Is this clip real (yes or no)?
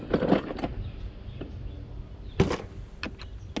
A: yes